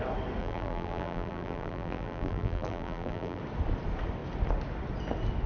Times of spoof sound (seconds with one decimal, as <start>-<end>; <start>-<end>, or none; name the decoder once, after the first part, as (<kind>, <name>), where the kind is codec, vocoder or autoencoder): 0.4-3.4 (vocoder, BigVGAN v2)